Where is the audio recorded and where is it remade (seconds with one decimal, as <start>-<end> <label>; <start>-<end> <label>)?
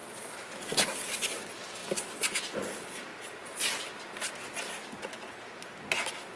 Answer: 0.0-6.4 recorded